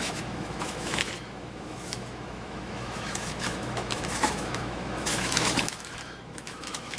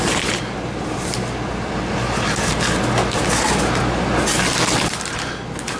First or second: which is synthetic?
first